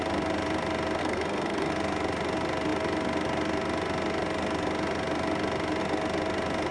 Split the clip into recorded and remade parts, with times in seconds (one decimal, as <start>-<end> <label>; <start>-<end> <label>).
0.0-1.0 recorded; 1.0-1.7 remade; 1.7-6.7 recorded